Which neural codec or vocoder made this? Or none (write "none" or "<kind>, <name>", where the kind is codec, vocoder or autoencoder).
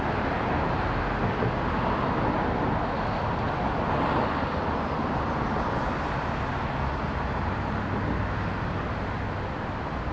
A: none